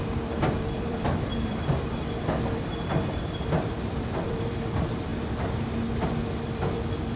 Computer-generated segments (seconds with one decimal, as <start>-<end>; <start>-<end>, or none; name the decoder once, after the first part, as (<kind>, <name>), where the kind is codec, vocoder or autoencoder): 0.0-5.1 (vocoder, BigVGAN v2); 6.3-7.2